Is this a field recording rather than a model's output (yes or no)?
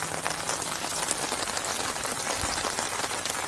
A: yes